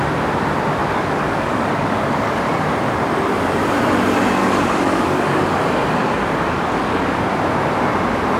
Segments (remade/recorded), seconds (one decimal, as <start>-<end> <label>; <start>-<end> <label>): 0.0-0.8 recorded; 0.8-2.4 remade; 2.4-4.4 recorded; 4.4-5.6 remade; 5.6-6.0 recorded; 6.0-7.3 remade; 7.3-8.4 recorded